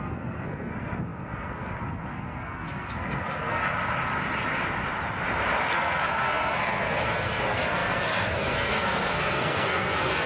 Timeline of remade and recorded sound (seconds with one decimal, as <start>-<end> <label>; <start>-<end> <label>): 0.0-3.6 remade; 3.6-5.6 recorded; 5.6-10.3 remade